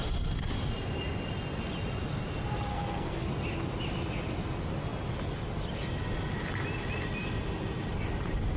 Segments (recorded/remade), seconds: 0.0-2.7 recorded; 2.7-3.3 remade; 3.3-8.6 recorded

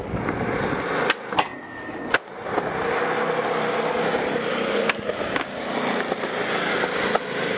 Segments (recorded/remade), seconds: 0.0-4.5 recorded; 4.5-5.8 remade; 5.8-7.6 recorded

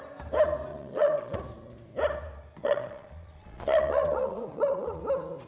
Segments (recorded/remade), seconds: 0.0-0.7 recorded; 0.7-1.4 remade; 1.4-2.6 recorded; 2.6-5.0 remade; 5.0-5.5 recorded

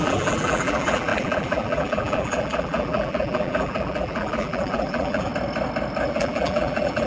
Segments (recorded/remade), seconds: 0.0-5.3 remade; 5.3-6.0 recorded; 6.0-7.1 remade